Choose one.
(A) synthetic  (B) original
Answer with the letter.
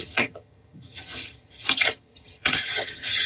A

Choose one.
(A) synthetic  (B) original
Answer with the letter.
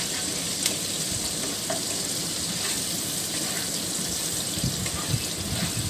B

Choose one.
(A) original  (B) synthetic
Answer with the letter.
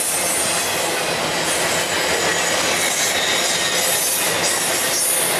A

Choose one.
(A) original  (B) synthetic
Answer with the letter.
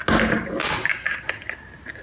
A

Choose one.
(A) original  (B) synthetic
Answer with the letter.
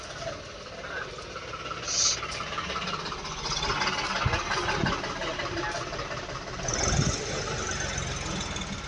A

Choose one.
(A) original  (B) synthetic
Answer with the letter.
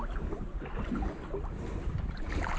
A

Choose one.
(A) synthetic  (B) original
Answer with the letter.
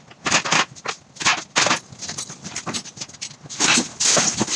B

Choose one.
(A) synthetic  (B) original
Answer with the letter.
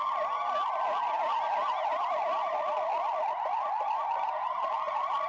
B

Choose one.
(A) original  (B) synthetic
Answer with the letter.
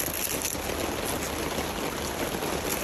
A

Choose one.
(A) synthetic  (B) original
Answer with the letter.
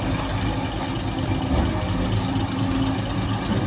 B